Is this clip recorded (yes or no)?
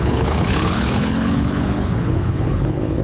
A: no